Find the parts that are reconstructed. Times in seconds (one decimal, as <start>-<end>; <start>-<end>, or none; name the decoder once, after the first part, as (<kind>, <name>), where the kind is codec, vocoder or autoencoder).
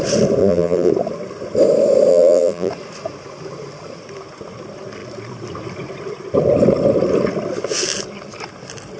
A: 0.4-0.9 (vocoder, BigVGAN v2); 2.1-2.7